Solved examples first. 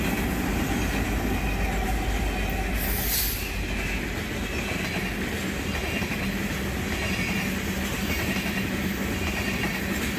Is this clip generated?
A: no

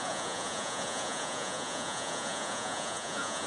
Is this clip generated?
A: yes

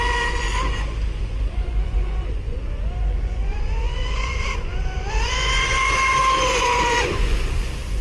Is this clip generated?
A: yes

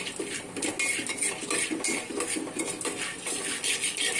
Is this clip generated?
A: no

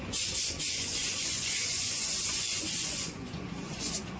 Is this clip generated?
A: yes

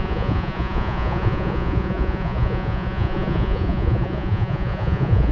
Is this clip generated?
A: yes